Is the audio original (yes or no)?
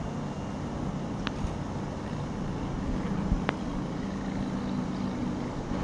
yes